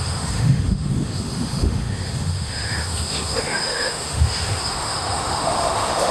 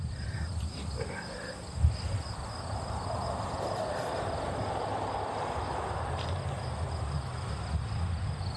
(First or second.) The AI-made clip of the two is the first